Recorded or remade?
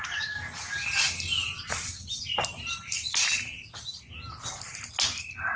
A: recorded